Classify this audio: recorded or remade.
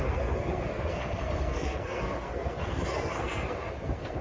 remade